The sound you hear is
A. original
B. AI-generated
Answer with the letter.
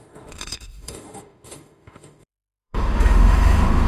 B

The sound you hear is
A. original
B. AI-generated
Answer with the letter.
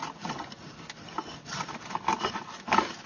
A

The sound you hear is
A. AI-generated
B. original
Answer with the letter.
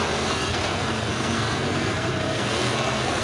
A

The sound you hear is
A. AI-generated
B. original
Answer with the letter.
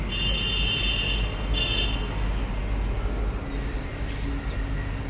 B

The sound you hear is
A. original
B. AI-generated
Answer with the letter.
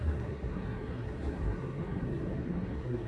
B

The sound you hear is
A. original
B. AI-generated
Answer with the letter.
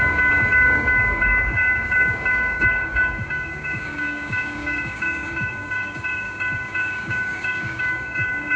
B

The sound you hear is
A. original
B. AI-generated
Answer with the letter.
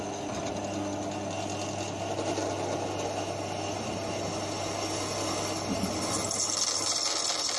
A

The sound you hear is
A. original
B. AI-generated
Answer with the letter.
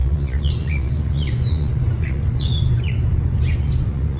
B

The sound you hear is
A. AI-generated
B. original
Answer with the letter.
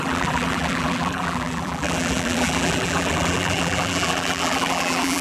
A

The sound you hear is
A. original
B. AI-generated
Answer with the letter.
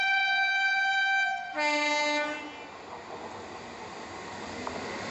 A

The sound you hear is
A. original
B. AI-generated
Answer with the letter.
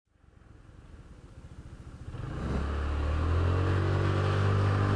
A